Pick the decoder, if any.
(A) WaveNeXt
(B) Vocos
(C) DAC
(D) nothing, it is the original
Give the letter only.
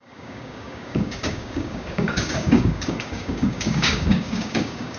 C